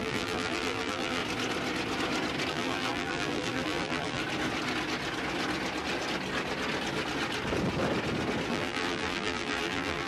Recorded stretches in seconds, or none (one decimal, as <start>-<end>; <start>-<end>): 1.2-2.5; 4.2-8.5